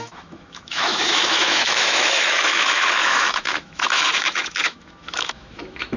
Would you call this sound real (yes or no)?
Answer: no